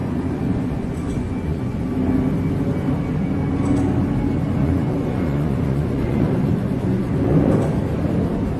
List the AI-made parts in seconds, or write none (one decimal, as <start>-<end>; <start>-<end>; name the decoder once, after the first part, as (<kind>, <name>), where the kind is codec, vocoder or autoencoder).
0.0-1.9 (vocoder, Vocos); 4.6-7.5